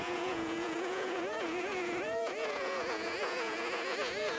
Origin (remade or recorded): remade